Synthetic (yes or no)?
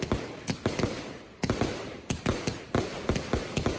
no